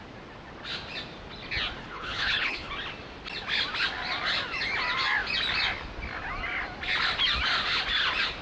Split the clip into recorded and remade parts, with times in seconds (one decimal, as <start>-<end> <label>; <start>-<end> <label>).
0.0-1.8 recorded; 1.8-2.7 remade; 2.7-8.4 recorded